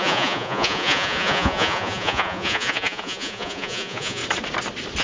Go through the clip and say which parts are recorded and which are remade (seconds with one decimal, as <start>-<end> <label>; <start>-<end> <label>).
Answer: 0.0-4.2 remade; 4.2-5.0 recorded